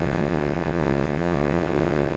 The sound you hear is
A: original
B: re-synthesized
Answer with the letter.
B